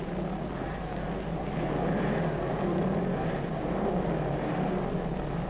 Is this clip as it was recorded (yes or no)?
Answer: yes